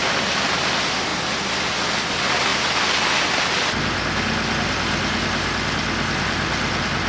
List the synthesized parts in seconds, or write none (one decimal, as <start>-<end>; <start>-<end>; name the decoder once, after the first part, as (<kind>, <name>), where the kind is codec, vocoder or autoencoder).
none